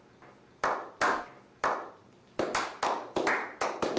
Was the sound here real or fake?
real